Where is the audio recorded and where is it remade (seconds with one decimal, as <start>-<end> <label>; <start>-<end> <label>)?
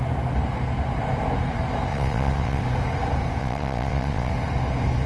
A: 0.0-1.9 recorded; 1.9-2.6 remade; 2.6-3.4 recorded; 3.4-4.3 remade; 4.3-5.1 recorded